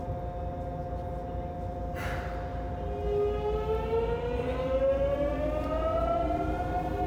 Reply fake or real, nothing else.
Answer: real